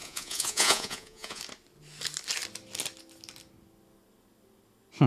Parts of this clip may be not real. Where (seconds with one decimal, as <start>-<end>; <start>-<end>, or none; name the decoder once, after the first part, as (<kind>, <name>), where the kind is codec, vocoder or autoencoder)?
0.0-1.4 (vocoder, Vocos)